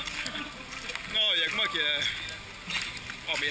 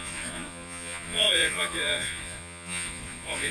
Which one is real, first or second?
first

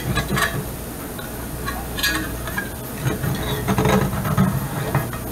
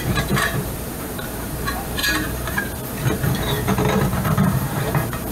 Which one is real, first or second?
first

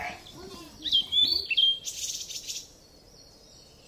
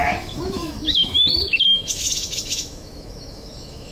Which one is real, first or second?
first